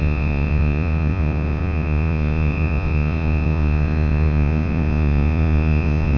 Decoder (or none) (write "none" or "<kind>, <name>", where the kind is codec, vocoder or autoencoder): vocoder, Vocos